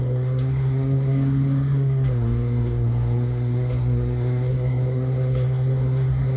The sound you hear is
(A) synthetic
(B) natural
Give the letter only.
A